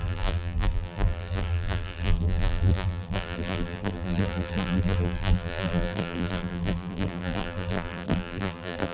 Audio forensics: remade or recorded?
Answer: remade